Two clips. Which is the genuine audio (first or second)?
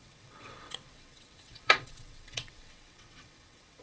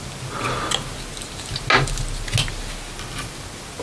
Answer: second